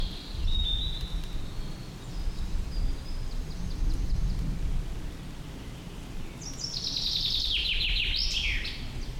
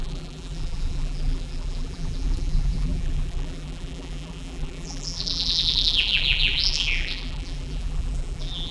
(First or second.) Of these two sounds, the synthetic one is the second